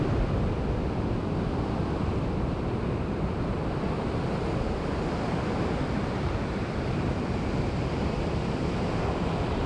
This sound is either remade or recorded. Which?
recorded